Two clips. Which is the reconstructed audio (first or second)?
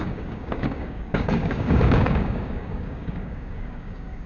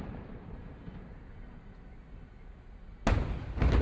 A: first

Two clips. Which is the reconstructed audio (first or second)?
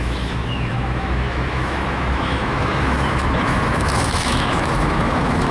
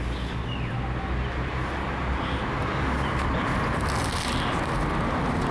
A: first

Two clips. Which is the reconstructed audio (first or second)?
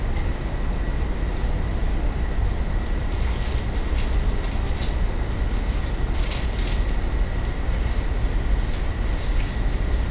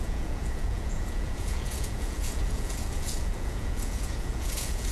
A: second